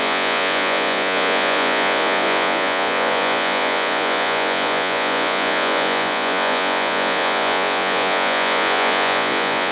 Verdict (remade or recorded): remade